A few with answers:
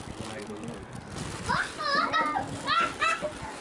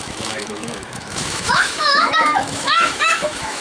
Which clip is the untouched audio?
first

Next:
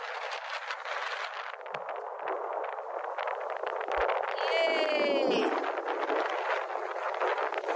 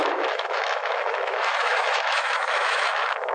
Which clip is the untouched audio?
first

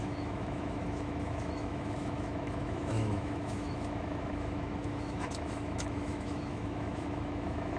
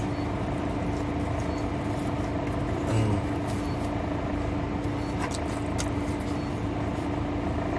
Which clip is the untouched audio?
second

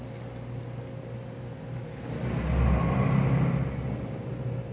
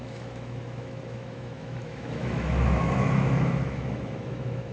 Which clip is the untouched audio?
first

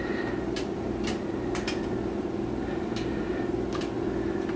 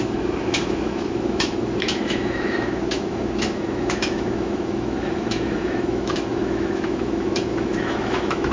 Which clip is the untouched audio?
first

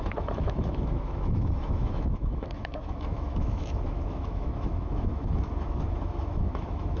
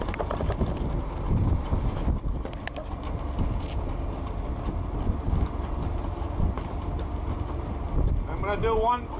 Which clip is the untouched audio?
second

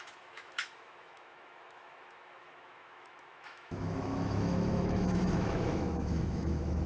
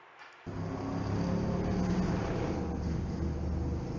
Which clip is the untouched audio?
second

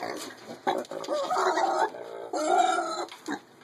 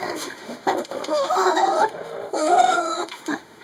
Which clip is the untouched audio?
first